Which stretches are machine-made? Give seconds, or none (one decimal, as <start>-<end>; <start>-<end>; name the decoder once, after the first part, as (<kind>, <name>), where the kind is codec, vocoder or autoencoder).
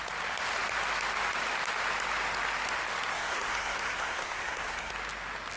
3.1-4.9 (codec, SNAC)